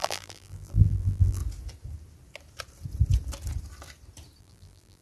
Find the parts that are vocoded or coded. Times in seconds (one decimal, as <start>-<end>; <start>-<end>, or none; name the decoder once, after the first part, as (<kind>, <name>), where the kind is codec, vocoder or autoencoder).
0.0-1.4 (vocoder, BigVGAN v2); 4.4-5.0